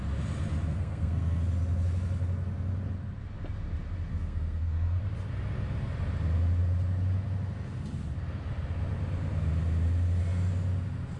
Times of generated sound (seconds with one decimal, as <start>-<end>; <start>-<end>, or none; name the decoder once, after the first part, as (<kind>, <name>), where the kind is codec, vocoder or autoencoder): 0.7-1.4 (codec, SNAC); 4.1-5.0

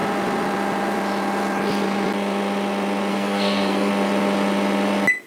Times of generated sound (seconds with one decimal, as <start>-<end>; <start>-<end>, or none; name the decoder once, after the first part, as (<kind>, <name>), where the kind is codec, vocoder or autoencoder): 3.1-3.9 (codec, SNAC)